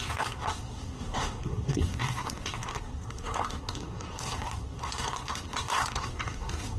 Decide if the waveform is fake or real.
fake